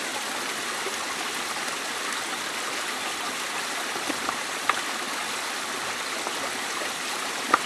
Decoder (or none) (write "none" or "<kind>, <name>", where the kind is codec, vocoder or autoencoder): none